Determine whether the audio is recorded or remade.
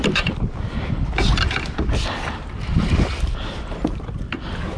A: recorded